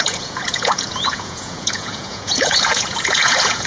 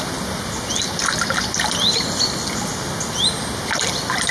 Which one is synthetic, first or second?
first